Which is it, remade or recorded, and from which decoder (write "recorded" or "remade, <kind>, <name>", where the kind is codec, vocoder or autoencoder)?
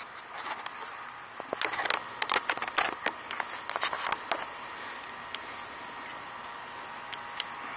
recorded